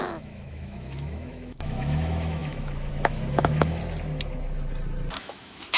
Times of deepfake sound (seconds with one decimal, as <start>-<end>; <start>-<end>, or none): 0.0-3.8; 5.1-5.8